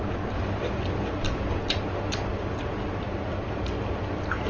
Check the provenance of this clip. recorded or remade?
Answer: recorded